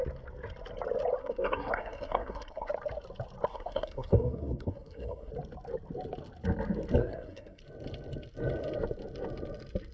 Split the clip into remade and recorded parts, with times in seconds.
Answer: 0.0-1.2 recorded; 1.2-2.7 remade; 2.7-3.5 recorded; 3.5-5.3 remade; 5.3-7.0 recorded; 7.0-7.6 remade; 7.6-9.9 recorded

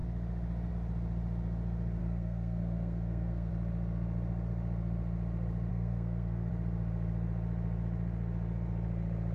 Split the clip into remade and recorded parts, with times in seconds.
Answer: 0.0-2.0 recorded; 2.0-3.5 remade; 3.5-5.7 recorded; 5.7-6.5 remade; 6.5-9.3 recorded